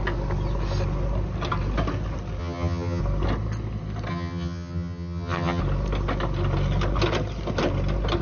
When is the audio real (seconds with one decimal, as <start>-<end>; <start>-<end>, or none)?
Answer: 0.0-2.4; 3.0-4.1; 5.6-8.2